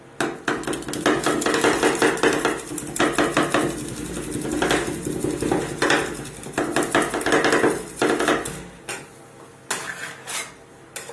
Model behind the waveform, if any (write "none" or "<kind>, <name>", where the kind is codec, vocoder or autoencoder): none